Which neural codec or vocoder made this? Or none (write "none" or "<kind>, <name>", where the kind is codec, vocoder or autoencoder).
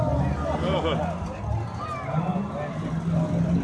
none